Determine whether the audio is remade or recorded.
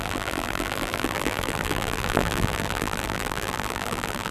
remade